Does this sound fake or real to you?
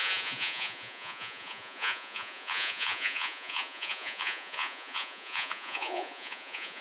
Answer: fake